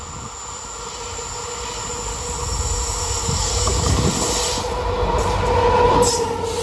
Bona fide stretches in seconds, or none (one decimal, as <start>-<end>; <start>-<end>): 0.0-3.2; 4.1-6.6